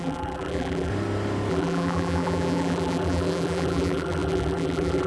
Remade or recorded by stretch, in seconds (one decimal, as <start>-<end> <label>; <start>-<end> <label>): 0.0-0.9 remade; 0.9-1.5 recorded; 1.5-5.1 remade